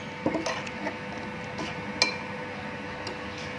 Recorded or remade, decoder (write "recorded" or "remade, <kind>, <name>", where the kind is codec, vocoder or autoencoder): recorded